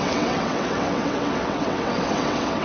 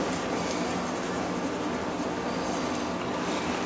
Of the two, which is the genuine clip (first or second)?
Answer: second